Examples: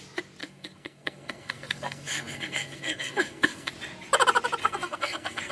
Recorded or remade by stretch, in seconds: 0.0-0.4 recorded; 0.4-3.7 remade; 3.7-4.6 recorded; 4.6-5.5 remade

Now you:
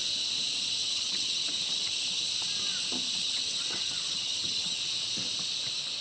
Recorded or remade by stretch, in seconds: 0.0-0.8 recorded; 0.8-2.2 remade; 2.2-3.2 recorded; 3.2-4.8 remade; 4.8-6.0 recorded